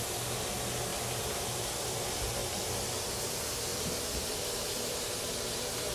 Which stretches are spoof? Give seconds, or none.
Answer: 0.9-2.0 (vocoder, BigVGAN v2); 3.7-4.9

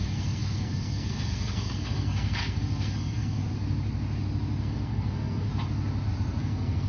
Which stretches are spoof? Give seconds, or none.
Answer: 0.0-3.4 (codec, SNAC); 4.6-5.5; 6.4-6.9

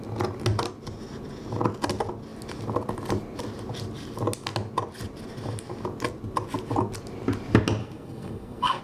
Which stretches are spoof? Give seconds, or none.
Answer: 7.8-8.8 (codec, SNAC)

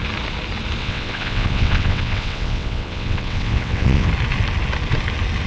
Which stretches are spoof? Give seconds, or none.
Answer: 0.8-4.1 (vocoder, WaveNeXt)

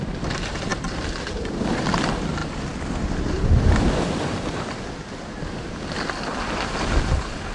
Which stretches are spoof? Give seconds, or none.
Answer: none